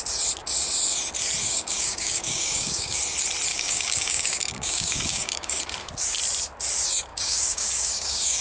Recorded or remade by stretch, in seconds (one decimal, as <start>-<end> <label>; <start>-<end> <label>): 0.0-1.4 recorded; 1.4-3.0 remade; 3.0-3.5 recorded; 3.5-5.6 remade; 5.6-7.1 recorded; 7.1-8.4 remade